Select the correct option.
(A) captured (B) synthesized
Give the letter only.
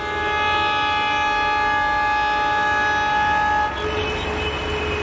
A